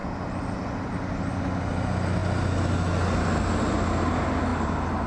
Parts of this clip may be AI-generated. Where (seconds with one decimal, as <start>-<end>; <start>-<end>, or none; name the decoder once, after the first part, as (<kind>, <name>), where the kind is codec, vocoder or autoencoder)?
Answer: none